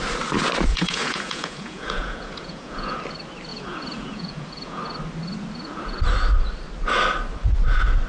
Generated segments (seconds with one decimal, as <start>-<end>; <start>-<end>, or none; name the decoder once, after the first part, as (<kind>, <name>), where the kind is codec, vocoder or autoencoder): 0.7-3.0 (vocoder, Vocos); 3.5-4.8